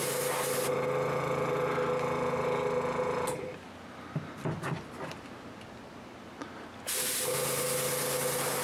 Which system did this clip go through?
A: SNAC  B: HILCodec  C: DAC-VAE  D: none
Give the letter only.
D